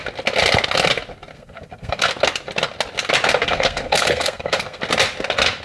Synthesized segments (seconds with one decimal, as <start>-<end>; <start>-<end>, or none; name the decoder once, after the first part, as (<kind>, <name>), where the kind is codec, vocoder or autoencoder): 1.3-2.1 (codec, SNAC); 3.4-4.8